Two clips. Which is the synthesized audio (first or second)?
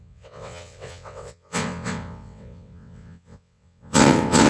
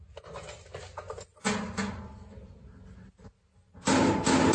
first